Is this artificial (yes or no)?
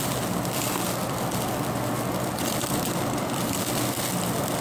no